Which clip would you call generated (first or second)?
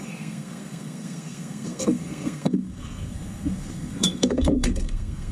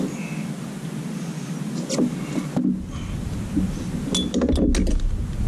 first